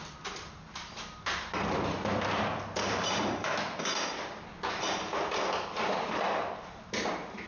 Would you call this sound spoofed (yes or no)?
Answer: no